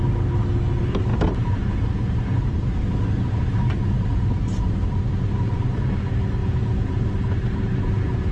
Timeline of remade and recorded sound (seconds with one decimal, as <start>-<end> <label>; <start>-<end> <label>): 0.0-6.4 recorded; 6.4-7.1 remade; 7.1-7.7 recorded; 7.7-8.3 remade